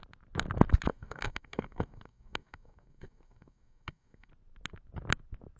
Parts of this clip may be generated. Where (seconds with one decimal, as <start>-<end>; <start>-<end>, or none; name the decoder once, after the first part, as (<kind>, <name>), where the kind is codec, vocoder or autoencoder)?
0.9-4.3 (codec, DAC)